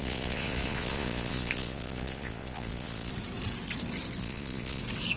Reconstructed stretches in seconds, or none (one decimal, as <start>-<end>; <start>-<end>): 0.0-3.1; 4.2-4.8